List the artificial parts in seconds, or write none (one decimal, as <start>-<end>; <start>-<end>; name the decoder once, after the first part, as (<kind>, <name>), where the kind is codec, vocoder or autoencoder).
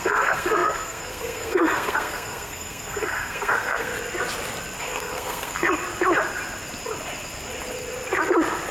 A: 0.0-3.9 (codec, SNAC); 4.8-5.8